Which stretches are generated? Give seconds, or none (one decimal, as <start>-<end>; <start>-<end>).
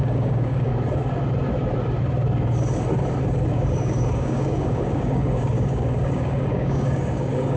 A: 0.0-0.7; 3.5-7.6